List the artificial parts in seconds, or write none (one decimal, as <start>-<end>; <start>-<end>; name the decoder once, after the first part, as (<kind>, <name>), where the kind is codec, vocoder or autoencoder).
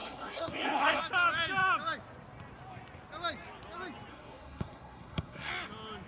0.0-1.0 (codec, SNAC); 4.1-5.5